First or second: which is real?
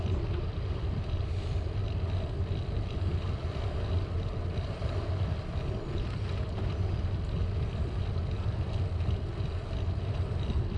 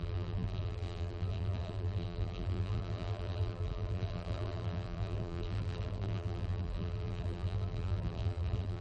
first